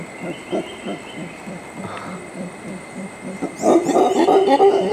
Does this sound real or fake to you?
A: real